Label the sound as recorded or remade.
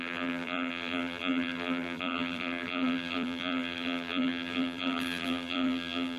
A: remade